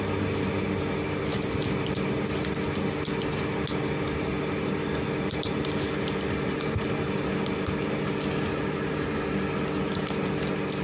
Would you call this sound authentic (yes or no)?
yes